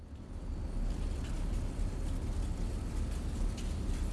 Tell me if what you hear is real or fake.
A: real